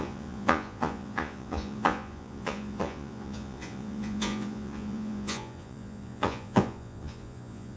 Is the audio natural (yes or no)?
no